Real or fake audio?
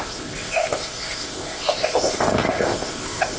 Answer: fake